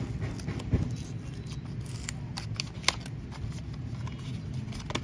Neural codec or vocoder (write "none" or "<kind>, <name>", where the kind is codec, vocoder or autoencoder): none